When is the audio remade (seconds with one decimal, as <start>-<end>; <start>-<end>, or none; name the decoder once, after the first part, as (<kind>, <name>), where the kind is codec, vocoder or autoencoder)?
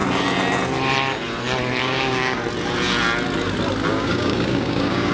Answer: 1.8-2.4 (codec, DAC); 3.9-5.1